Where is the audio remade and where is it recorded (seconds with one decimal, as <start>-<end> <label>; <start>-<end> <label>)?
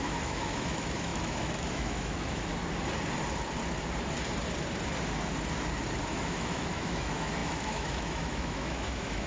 0.0-2.5 remade; 2.5-6.1 recorded; 6.1-9.3 remade